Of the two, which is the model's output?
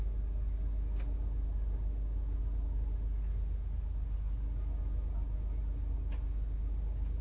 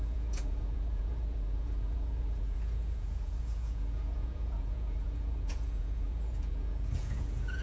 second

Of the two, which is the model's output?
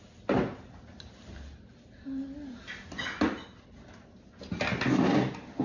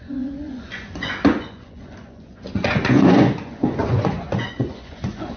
second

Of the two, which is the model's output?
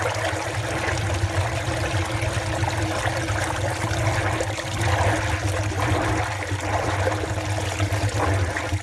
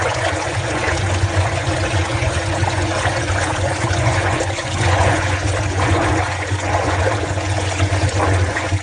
second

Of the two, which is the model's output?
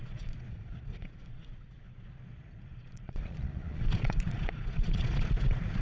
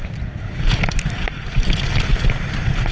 first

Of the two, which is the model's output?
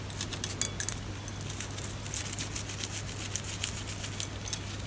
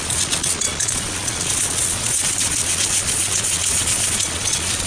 second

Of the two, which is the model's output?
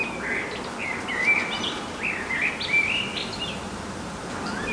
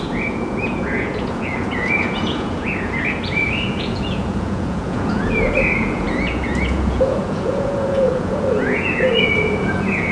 second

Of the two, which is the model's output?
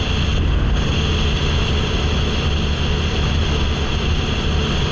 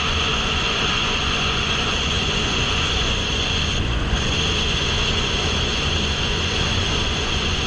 second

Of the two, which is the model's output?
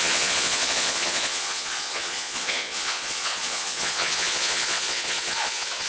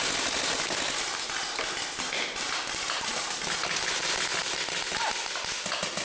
first